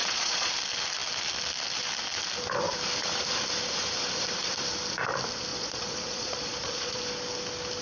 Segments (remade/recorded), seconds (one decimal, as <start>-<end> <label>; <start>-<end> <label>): 0.0-0.5 remade; 0.5-5.5 recorded; 5.5-7.0 remade; 7.0-7.8 recorded